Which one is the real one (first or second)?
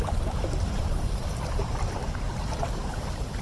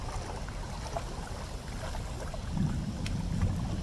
second